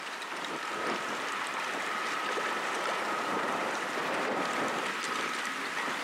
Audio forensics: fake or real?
fake